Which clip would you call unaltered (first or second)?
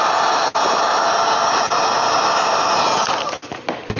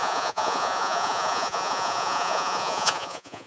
first